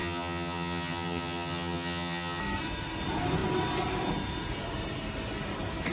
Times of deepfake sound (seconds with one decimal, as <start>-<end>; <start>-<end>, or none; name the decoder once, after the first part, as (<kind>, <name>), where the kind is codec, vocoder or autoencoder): 0.0-2.4 (vocoder, HiFi-GAN)